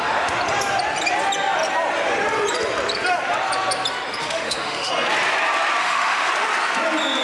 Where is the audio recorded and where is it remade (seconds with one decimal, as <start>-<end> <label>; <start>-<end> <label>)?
0.0-4.2 recorded; 4.2-4.9 remade; 4.9-5.8 recorded; 5.8-6.3 remade; 6.3-7.2 recorded